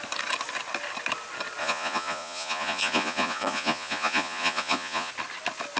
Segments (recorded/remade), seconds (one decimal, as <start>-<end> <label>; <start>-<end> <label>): 0.0-1.6 recorded; 1.6-5.1 remade; 5.1-5.8 recorded